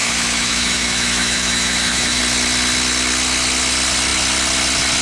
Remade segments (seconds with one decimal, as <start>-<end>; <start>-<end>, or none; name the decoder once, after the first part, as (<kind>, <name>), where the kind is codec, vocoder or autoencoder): 0.0-2.2 (autoencoder, DAC-VAE)